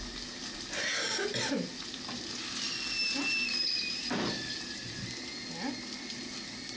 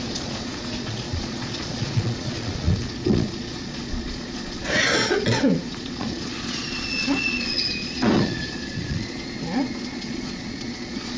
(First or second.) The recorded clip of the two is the first